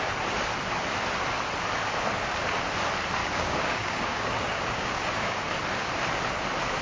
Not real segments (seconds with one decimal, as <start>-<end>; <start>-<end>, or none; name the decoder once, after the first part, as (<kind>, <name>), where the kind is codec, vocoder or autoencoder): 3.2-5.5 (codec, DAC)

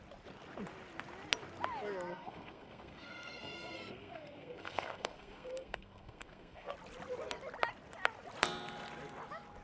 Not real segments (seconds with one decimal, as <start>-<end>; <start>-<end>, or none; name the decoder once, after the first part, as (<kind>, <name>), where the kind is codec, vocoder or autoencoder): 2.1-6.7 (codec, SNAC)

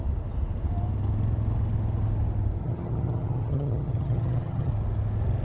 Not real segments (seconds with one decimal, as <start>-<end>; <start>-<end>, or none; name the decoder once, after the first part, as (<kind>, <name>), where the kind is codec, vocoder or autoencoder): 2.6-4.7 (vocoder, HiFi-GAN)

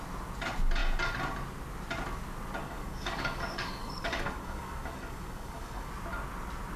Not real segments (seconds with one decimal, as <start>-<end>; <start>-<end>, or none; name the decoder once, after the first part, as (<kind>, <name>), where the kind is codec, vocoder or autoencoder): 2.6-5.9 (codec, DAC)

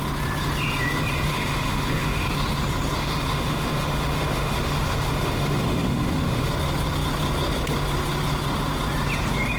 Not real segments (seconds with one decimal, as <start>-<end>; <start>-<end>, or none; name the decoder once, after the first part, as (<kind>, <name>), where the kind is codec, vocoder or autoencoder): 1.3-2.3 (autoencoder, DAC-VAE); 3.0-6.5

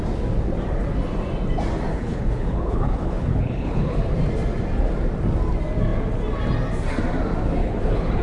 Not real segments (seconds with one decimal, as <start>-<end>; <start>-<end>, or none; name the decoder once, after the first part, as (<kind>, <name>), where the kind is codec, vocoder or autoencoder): 1.9-4.0 (codec, HILCodec); 7.6-8.2

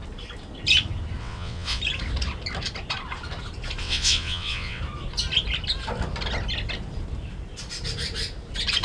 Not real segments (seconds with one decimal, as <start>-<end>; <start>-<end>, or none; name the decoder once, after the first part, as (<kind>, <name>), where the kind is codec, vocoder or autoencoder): 1.2-1.8 (vocoder, WaveNeXt); 3.8-4.8